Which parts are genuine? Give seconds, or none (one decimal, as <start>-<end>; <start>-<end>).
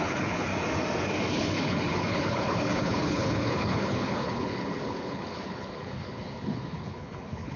0.5-1.3